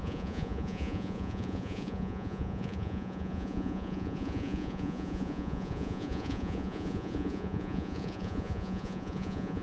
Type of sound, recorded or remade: remade